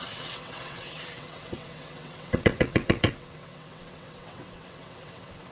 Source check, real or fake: fake